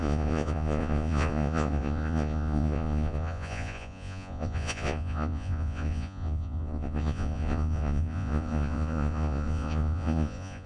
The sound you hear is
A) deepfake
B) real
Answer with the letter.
A